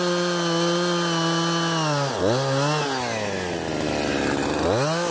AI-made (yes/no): no